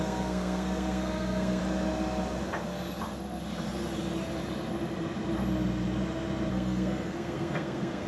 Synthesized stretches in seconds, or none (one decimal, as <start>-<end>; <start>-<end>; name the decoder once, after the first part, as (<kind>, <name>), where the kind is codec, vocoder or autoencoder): 0.0-1.6 (codec, SNAC); 6.5-8.1